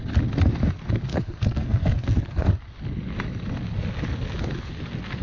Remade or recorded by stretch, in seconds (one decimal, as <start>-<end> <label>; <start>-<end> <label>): 0.0-1.1 recorded; 1.1-2.6 remade; 2.6-5.2 recorded